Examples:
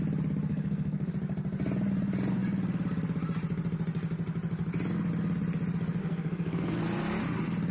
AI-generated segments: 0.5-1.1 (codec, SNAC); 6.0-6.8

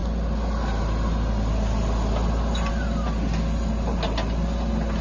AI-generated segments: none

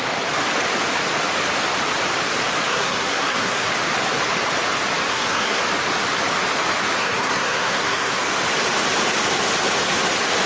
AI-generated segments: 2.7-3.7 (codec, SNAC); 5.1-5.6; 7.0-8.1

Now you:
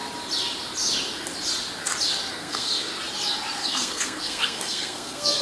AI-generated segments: 2.3-2.9 (codec, SNAC); 3.6-5.4

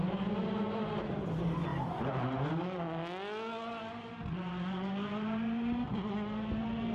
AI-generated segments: none

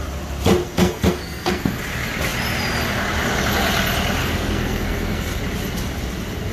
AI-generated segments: 0.6-1.8 (codec, SNAC); 4.2-5.4

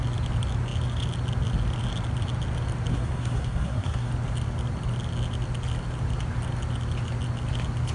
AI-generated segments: 2.9-4.1 (codec, SNAC)

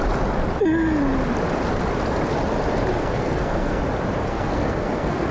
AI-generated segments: 3.0-3.8 (codec, SNAC); 4.2-5.3